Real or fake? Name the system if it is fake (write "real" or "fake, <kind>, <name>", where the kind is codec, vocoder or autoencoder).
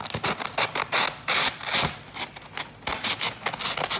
real